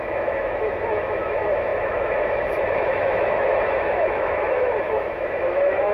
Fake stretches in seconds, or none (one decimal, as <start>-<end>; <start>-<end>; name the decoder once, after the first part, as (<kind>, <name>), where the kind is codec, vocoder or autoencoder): 0.0-5.9 (autoencoder, DAC-VAE)